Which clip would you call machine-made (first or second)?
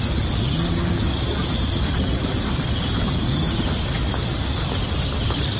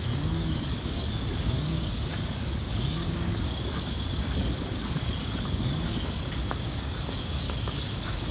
second